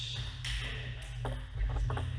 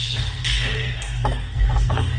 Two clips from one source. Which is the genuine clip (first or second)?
first